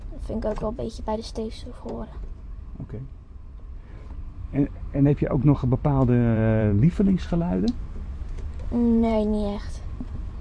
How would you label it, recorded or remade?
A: remade